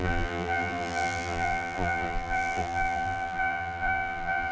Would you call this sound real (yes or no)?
no